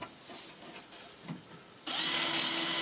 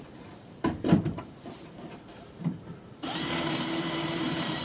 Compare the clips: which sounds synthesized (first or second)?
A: second